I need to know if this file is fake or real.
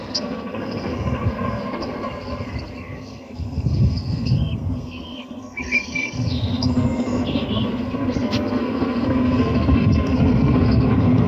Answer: fake